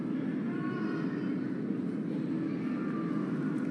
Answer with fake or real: real